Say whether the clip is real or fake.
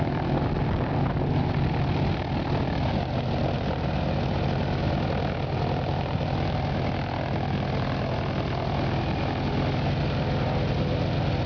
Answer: real